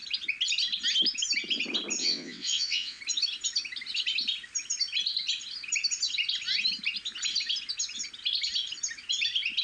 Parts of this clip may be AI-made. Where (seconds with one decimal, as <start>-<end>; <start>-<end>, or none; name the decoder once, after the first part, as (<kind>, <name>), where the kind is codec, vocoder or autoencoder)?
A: 2.0-3.0 (vocoder, WaveNeXt)